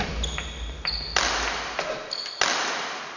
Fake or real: real